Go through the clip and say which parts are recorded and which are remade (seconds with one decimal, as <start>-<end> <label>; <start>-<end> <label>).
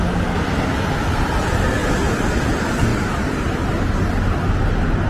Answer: 0.0-1.8 recorded; 1.8-2.4 remade; 2.4-2.9 recorded; 2.9-3.9 remade; 3.9-5.1 recorded